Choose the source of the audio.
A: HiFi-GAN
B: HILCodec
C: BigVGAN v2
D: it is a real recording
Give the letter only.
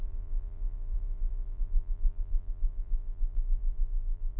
C